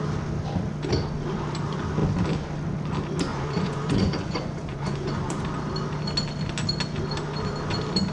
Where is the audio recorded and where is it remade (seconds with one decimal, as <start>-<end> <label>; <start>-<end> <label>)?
0.0-3.3 recorded; 3.3-5.4 remade; 5.4-8.1 recorded